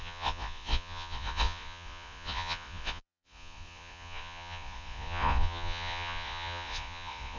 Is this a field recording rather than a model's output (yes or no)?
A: no